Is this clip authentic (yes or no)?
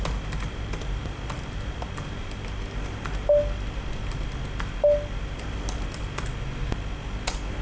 yes